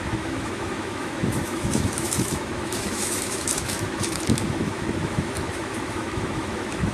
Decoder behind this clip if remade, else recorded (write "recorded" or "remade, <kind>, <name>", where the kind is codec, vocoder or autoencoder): remade, autoencoder, DAC-VAE